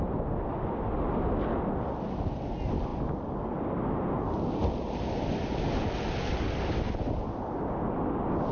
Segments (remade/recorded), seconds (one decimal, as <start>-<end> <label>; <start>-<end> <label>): 0.0-8.5 recorded